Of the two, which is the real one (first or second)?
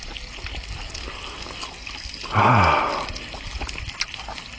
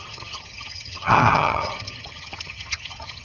first